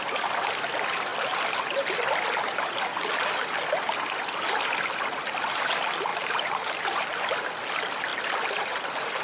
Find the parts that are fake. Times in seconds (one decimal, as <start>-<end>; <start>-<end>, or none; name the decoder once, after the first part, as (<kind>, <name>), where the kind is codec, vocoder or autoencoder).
6.1-7.0 (vocoder, BigVGAN v2)